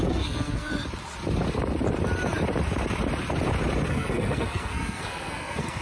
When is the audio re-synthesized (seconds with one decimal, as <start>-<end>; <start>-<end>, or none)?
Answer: 0.0-0.7; 3.9-5.8